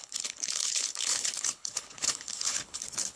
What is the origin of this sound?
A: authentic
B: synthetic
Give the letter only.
B